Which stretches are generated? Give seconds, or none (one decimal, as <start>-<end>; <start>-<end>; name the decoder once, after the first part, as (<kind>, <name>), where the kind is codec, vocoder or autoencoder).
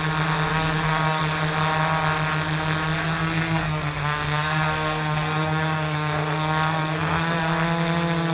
0.5-1.2 (codec, SNAC); 3.0-7.4